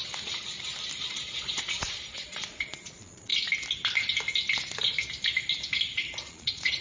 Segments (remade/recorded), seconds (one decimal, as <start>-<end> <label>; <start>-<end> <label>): 0.0-1.1 recorded; 1.1-3.3 remade; 3.3-6.3 recorded; 6.3-6.8 remade